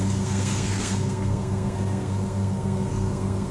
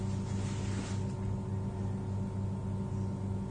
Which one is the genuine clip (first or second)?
second